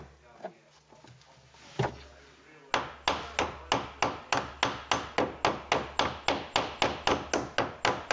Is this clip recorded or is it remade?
recorded